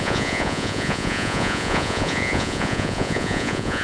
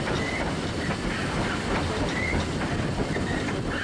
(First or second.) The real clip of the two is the second